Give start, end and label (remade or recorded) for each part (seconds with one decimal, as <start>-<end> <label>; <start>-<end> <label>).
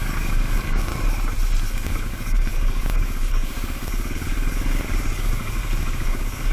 0.0-0.9 remade; 0.9-1.7 recorded; 1.7-6.5 remade